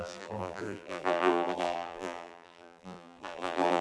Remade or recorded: remade